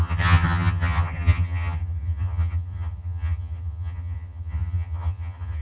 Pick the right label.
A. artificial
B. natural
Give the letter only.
A